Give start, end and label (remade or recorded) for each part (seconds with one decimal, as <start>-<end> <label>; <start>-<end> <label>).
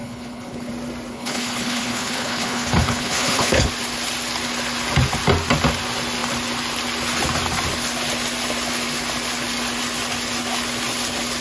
0.0-0.7 remade; 0.7-1.1 recorded; 1.1-3.7 remade; 3.7-11.4 recorded